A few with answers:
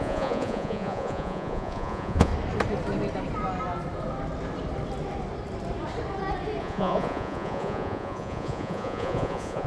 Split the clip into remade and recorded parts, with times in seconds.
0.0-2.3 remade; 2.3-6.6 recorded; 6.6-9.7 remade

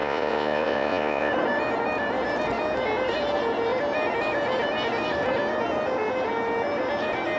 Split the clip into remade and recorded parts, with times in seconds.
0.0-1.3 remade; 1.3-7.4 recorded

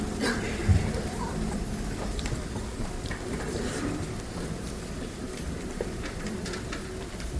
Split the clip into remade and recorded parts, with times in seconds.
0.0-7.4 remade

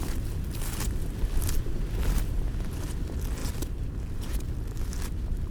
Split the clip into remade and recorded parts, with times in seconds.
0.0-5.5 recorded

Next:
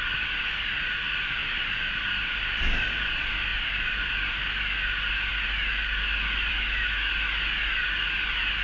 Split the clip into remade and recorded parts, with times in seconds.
0.0-6.5 recorded; 6.5-7.1 remade; 7.1-8.6 recorded

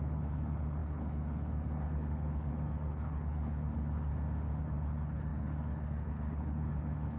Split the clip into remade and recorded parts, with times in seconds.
0.0-4.1 remade; 4.1-4.6 recorded; 4.6-7.2 remade

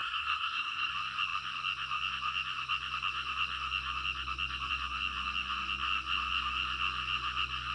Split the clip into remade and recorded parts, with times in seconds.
0.0-0.9 remade; 0.9-7.7 recorded